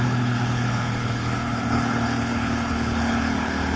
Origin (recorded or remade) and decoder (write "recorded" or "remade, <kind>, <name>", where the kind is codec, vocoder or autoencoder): remade, codec, HILCodec